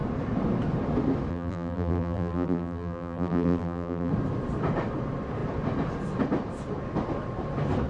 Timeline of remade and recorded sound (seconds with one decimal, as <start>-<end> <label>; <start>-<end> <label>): 0.0-1.3 recorded; 1.3-4.1 remade; 4.1-7.9 recorded